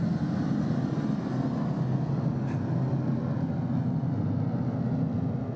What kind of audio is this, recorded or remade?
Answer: recorded